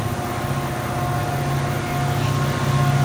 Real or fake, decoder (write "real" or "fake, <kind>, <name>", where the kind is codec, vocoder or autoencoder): real